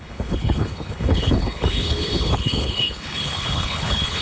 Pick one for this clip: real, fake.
fake